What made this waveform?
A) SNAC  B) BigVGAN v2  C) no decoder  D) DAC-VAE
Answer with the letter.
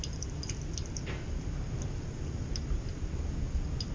C